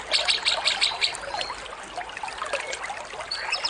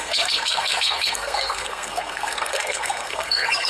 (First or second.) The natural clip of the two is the first